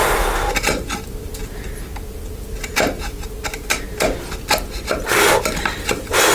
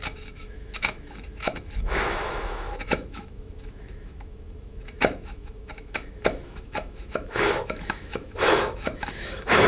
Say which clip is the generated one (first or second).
second